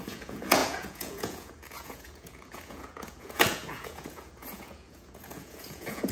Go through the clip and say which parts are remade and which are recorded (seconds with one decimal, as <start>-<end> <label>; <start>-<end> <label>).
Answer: 0.0-6.1 remade